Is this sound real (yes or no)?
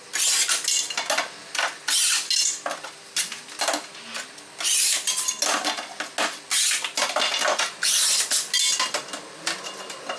yes